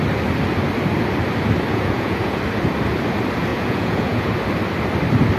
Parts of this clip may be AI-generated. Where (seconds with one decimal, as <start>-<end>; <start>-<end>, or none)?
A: 1.7-2.4; 3.5-4.3